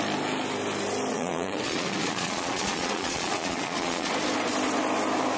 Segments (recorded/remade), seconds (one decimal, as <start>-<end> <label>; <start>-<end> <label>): 0.0-1.1 recorded; 1.1-4.1 remade; 4.1-5.4 recorded